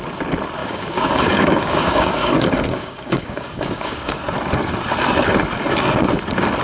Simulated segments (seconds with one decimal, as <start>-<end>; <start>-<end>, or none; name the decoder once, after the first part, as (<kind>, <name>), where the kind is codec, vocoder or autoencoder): 0.6-4.2 (codec, DAC)